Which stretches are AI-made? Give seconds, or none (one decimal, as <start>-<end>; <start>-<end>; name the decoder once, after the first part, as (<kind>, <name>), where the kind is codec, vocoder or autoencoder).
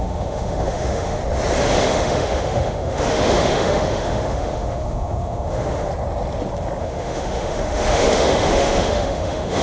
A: 0.0-1.2 (autoencoder, DAC-VAE); 1.8-5.9; 6.8-9.6